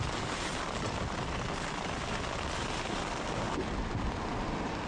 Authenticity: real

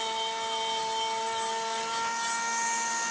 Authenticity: real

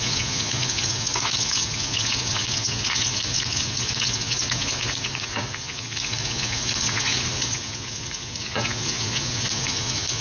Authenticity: fake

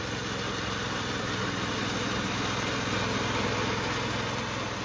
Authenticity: real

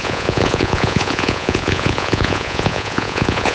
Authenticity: fake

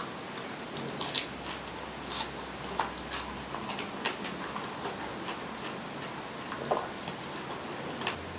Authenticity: real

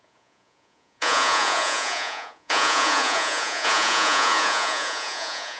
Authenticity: fake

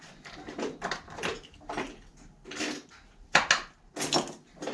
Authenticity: real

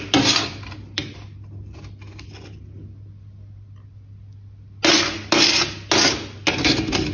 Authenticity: real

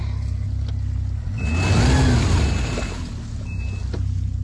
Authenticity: real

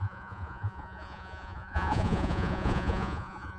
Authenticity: fake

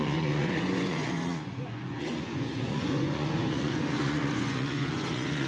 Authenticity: fake